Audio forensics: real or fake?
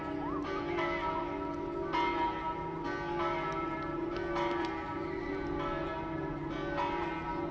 real